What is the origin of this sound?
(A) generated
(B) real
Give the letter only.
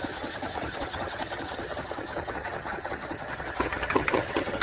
A